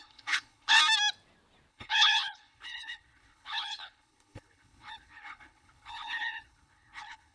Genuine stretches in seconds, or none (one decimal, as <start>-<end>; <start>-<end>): 0.8-1.7